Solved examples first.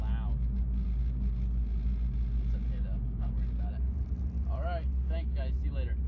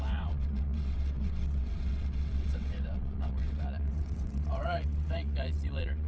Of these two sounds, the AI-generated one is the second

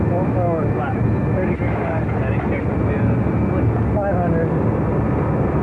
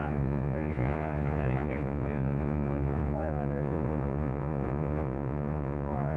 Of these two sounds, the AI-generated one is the second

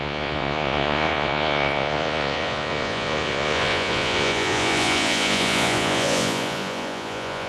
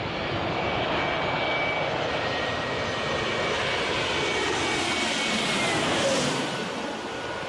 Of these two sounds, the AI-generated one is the first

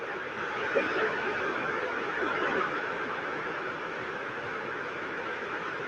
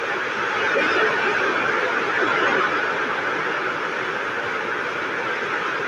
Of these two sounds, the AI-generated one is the first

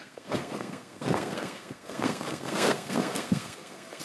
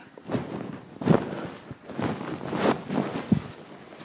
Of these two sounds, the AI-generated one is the first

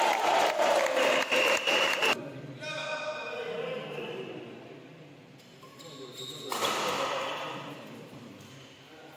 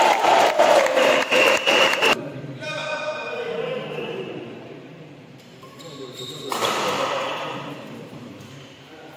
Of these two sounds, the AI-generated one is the second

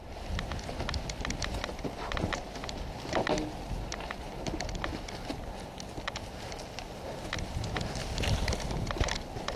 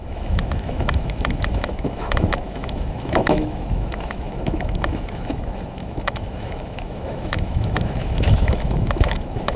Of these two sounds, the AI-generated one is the second